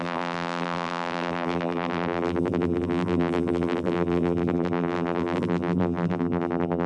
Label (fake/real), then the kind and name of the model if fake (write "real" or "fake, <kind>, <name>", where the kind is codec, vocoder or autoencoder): fake, vocoder, BigVGAN v2